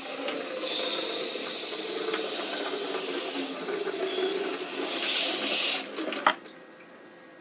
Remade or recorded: recorded